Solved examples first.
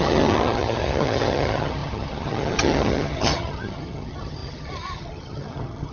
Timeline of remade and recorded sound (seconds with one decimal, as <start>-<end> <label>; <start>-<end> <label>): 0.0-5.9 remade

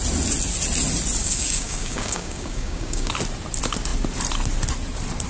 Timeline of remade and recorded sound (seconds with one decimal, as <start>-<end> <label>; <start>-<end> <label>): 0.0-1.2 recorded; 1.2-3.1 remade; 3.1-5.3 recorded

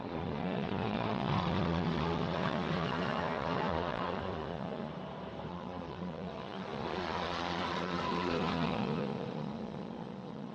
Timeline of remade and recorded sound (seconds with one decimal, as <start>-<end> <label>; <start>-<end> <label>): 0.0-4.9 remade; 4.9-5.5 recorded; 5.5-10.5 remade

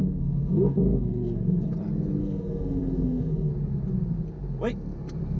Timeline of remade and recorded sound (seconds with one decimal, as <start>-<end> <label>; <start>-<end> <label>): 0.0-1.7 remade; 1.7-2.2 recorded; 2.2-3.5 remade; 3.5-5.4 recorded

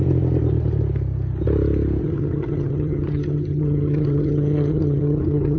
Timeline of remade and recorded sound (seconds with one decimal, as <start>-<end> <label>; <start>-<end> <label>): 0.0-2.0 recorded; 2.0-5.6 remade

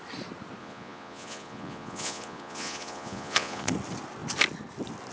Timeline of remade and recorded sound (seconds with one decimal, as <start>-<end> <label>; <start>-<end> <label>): 0.0-0.6 recorded; 0.6-3.7 remade; 3.7-5.1 recorded